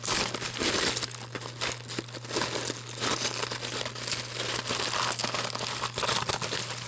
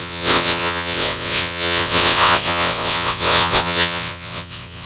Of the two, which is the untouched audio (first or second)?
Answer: first